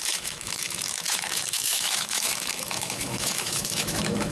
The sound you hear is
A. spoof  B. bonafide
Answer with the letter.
A